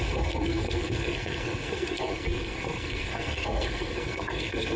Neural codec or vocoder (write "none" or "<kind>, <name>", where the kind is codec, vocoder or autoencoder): codec, SNAC